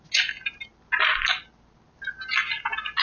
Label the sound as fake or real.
real